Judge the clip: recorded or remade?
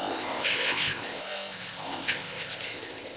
remade